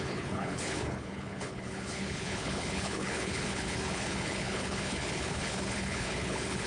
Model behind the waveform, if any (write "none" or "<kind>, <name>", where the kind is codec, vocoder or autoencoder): codec, HILCodec